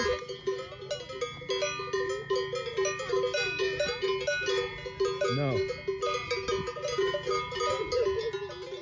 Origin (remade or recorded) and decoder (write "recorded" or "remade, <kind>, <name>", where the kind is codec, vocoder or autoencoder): recorded